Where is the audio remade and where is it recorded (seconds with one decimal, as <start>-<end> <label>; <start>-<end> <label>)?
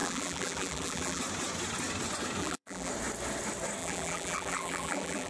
0.0-1.2 remade; 1.2-2.4 recorded; 2.4-2.9 remade; 2.9-3.8 recorded; 3.8-5.3 remade